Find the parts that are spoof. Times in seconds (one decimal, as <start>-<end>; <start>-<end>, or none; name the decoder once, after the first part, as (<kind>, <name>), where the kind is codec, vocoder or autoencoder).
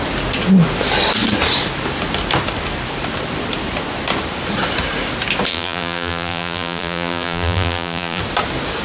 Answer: 5.5-8.2 (vocoder, BigVGAN v2)